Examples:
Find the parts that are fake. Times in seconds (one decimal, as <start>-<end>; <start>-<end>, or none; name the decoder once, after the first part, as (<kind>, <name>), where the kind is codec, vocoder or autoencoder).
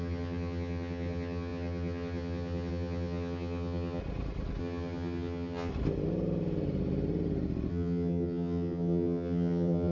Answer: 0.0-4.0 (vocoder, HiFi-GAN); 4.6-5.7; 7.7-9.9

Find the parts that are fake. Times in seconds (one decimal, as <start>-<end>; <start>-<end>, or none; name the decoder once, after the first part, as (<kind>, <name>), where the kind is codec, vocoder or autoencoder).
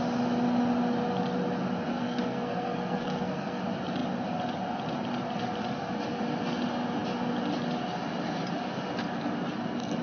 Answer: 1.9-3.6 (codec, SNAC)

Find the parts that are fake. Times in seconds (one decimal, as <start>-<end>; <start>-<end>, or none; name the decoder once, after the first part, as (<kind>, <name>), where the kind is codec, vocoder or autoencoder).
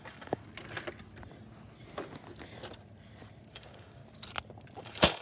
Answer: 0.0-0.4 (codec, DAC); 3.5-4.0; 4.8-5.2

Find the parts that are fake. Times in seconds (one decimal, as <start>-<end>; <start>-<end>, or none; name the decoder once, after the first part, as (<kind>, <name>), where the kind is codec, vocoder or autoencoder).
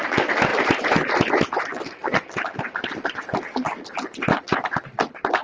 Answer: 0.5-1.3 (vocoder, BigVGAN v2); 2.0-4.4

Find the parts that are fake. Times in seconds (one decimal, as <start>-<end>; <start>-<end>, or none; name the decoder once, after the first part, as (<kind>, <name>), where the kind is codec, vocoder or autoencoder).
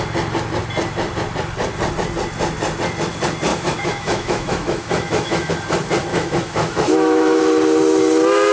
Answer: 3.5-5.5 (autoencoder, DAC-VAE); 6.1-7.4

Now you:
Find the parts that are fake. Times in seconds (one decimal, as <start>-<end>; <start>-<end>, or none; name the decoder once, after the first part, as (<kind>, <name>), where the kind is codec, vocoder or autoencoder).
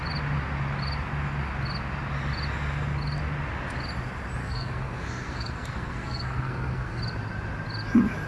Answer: 4.4-7.0 (codec, SNAC)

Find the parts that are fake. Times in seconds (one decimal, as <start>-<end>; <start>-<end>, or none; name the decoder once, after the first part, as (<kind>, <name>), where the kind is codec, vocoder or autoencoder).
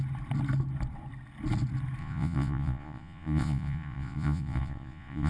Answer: 2.0-5.3 (vocoder, Vocos)